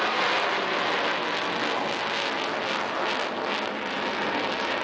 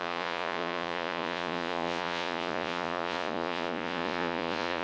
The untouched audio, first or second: first